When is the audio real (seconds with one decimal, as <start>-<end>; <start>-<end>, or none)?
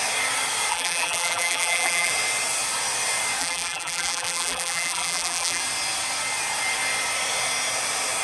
0.0-0.7; 2.1-3.4; 5.6-8.2